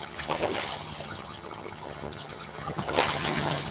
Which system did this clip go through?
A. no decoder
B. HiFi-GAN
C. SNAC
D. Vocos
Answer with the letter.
B